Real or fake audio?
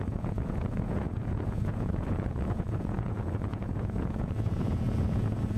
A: fake